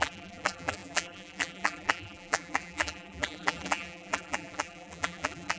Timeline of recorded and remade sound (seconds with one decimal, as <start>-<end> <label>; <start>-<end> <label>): 0.0-5.6 remade